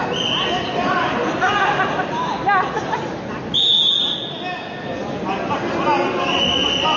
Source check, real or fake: real